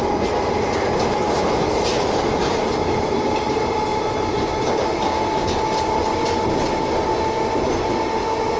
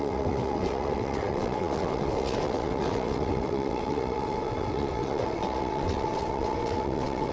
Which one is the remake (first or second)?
second